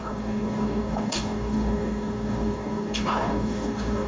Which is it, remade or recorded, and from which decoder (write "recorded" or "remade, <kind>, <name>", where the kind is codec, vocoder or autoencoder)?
remade, codec, DAC